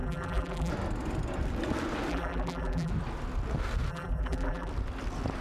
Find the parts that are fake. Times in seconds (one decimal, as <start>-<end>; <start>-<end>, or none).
0.0-0.7; 2.1-2.9; 3.9-4.7